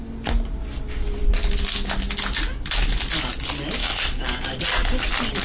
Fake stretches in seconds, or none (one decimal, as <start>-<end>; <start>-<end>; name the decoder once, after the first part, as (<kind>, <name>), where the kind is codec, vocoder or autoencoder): 3.8-4.6 (codec, DAC)